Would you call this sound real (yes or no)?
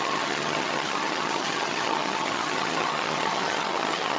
no